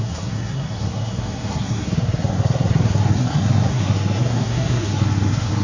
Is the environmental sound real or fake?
fake